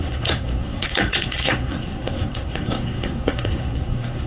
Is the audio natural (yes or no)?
no